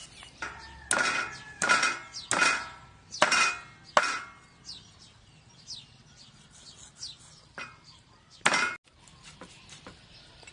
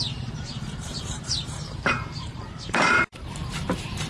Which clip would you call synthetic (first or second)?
second